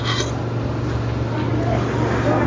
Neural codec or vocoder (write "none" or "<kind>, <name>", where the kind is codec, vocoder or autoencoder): none